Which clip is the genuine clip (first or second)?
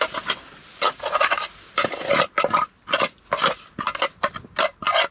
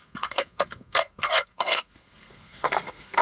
first